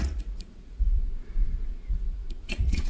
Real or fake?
fake